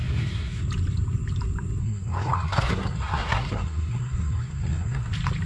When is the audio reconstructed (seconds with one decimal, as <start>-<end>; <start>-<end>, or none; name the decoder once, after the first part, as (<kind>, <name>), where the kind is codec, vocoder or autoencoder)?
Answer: 0.0-0.6 (codec, SNAC); 1.8-5.1